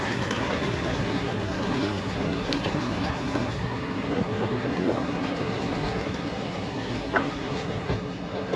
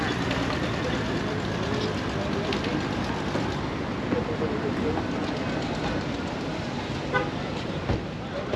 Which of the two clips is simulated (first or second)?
first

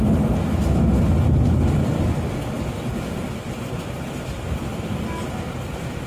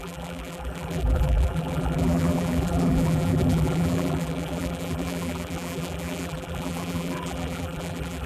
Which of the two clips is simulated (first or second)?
second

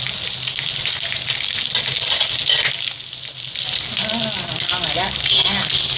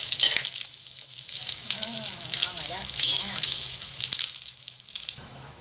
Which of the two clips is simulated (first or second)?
second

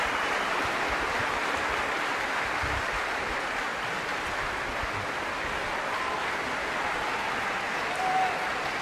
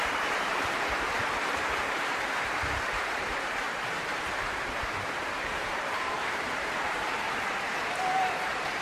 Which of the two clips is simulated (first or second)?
second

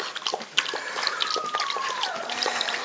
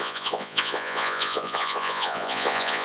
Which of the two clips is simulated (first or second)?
second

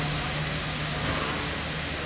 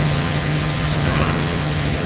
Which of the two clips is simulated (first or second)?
second